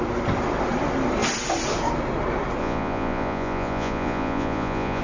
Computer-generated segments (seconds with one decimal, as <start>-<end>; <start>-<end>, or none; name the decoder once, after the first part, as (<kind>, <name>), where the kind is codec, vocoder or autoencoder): 2.6-5.0 (vocoder, Vocos)